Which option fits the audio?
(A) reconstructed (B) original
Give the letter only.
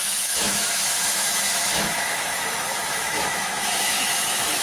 A